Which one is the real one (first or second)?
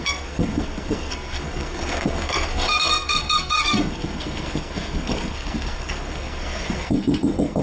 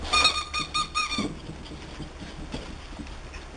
second